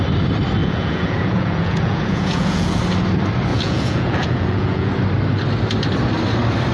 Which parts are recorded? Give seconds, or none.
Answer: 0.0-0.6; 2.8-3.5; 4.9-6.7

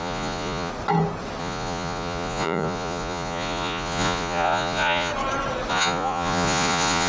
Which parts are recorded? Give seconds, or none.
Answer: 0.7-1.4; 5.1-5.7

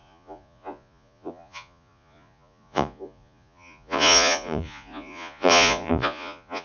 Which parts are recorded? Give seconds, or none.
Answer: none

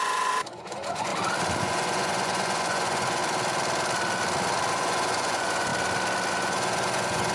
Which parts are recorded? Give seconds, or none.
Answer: 1.1-1.6; 3.2-4.7; 5.7-6.3

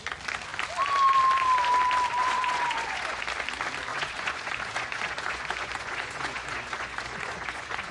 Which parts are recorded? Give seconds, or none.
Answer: 0.0-2.2; 3.2-3.9